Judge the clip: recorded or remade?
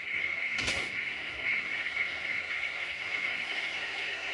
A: remade